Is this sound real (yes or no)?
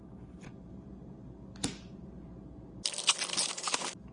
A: yes